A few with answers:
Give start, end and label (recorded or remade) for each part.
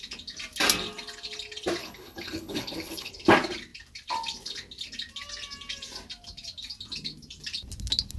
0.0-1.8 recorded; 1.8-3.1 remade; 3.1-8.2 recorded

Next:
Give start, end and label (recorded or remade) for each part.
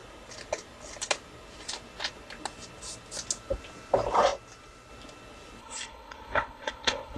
0.0-5.6 recorded; 5.6-7.2 remade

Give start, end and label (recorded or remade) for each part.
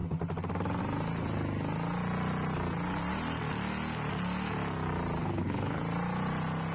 0.0-5.2 recorded; 5.2-5.8 remade; 5.8-6.7 recorded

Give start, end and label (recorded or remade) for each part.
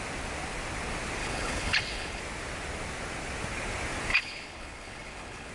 0.0-1.2 recorded; 1.2-2.2 remade; 2.2-4.1 recorded; 4.1-5.5 remade